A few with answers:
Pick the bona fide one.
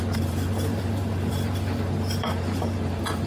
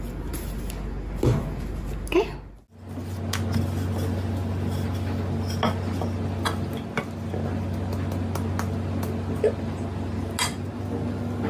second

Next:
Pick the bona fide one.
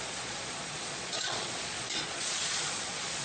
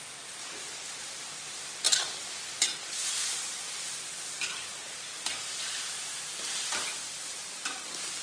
second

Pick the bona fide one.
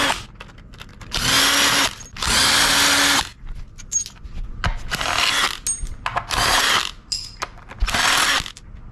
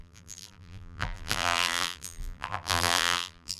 first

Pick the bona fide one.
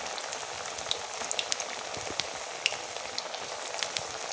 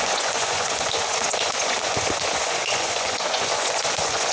first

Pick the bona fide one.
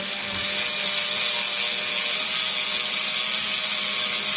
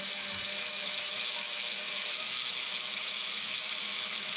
first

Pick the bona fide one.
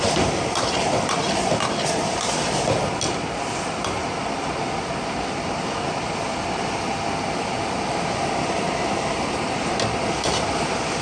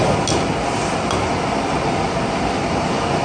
second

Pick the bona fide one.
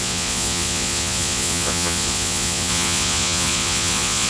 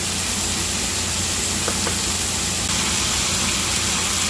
second